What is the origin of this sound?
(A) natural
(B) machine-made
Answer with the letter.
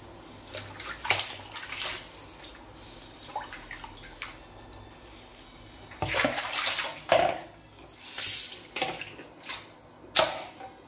A